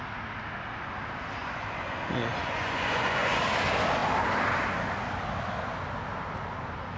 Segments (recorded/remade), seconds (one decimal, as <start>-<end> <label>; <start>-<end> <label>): 0.0-1.4 recorded; 1.4-2.0 remade; 2.0-2.4 recorded; 2.4-3.4 remade; 3.4-7.0 recorded